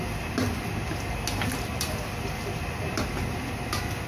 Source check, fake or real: real